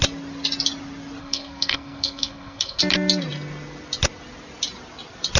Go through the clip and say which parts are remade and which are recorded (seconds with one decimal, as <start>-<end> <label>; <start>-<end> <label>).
0.0-1.2 recorded; 1.2-2.8 remade; 2.8-5.4 recorded